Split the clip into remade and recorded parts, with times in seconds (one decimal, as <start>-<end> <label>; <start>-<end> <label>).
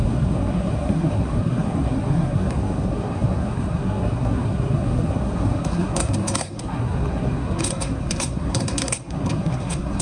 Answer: 0.0-10.0 remade